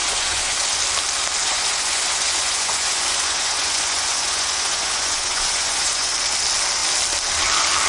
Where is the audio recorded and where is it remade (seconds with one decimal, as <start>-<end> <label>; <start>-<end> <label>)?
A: 0.0-0.8 remade; 0.8-1.4 recorded; 1.4-6.1 remade; 6.1-7.9 recorded